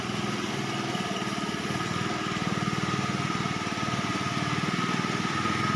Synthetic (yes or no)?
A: no